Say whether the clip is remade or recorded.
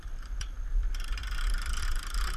remade